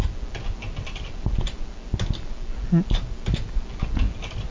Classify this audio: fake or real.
real